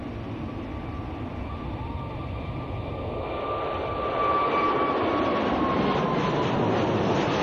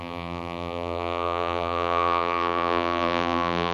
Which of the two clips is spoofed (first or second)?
second